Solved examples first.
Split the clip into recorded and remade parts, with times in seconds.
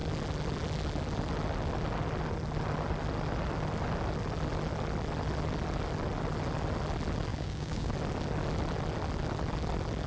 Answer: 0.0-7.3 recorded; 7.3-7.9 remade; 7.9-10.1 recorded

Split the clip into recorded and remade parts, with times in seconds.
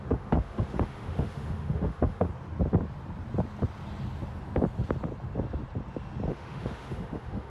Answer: 0.0-2.3 remade; 2.3-6.3 recorded; 6.3-7.5 remade